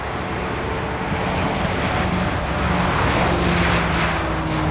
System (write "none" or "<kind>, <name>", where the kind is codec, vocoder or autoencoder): none